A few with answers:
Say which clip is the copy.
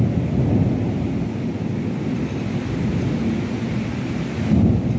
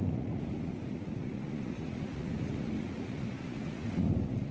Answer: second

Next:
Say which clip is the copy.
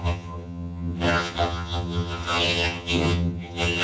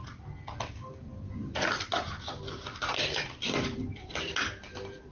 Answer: first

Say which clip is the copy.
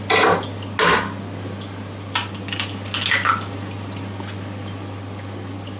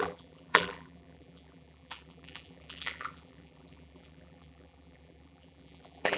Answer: second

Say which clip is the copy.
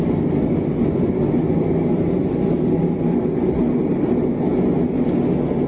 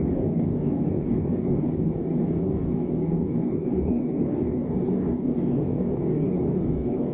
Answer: second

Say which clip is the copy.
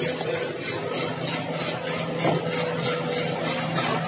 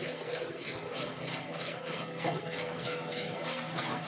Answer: second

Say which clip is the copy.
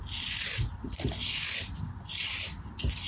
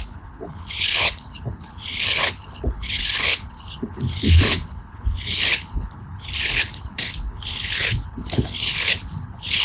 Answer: second